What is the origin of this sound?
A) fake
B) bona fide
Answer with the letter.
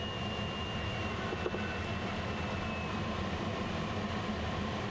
B